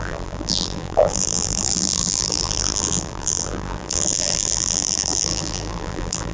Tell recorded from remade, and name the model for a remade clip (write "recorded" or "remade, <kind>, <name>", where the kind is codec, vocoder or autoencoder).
remade, vocoder, BigVGAN v2